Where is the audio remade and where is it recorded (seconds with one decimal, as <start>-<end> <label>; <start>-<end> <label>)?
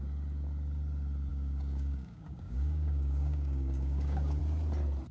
0.0-1.3 recorded; 1.3-4.4 remade; 4.4-5.1 recorded